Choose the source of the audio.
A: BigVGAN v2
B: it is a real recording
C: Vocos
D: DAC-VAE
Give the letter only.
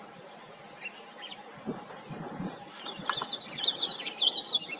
B